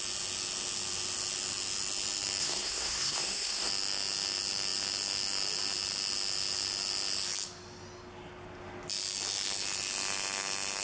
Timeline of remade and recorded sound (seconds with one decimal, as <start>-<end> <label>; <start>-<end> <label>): 0.0-2.4 recorded; 2.4-3.7 remade; 3.7-10.8 recorded